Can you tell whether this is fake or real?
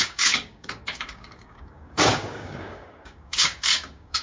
fake